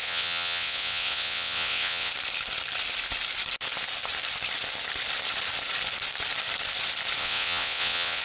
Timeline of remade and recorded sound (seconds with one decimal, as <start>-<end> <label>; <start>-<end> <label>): 0.0-2.1 remade; 2.1-7.2 recorded; 7.2-8.2 remade